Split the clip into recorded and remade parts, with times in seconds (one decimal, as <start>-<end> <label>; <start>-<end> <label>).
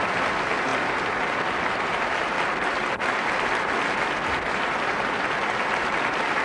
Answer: 0.0-6.4 recorded